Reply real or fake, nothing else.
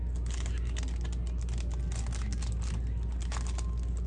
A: real